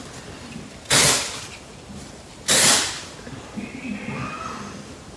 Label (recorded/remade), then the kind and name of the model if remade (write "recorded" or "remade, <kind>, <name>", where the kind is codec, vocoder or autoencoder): recorded